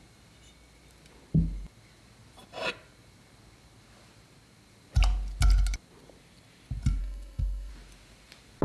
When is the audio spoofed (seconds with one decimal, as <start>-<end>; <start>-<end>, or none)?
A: 7.0-7.7